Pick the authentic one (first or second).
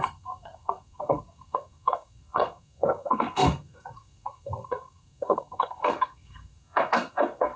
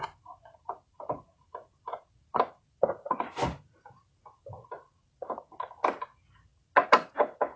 second